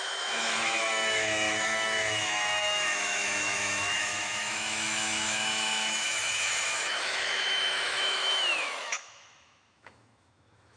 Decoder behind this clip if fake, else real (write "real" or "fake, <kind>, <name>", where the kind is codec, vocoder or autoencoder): fake, autoencoder, DAC-VAE